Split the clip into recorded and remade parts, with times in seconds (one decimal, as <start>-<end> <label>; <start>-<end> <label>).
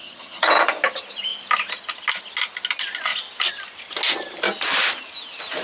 0.0-0.5 remade; 0.5-5.6 recorded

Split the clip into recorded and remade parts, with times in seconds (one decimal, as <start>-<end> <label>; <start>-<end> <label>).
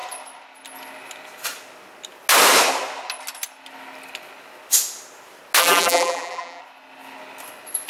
0.0-5.6 recorded; 5.6-6.6 remade; 6.6-7.9 recorded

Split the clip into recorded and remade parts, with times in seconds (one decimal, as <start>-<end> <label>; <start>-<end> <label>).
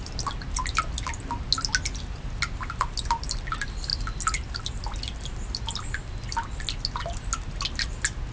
0.0-8.3 recorded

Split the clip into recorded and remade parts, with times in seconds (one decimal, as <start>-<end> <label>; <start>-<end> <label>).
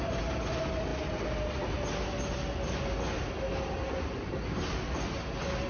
0.0-5.7 recorded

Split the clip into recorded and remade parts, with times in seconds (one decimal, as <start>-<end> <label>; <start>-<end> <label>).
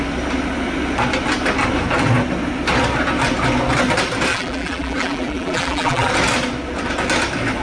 0.0-4.3 recorded; 4.3-6.1 remade; 6.1-7.6 recorded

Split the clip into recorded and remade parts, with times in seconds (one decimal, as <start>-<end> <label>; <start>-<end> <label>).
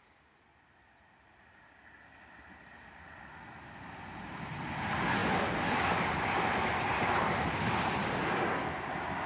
0.0-9.3 recorded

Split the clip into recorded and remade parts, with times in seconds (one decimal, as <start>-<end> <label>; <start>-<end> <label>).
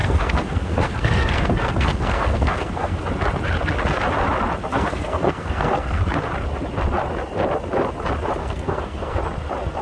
0.0-3.0 remade; 3.0-4.7 recorded; 4.7-6.0 remade; 6.0-8.4 recorded; 8.4-9.2 remade; 9.2-9.8 recorded